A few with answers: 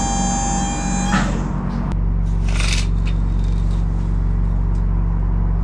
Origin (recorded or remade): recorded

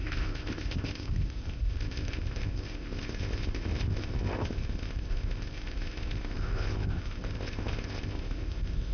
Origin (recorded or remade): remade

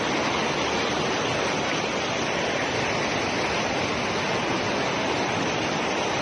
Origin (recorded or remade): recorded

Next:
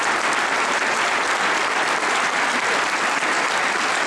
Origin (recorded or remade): recorded